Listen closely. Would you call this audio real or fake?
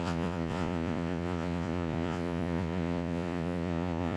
fake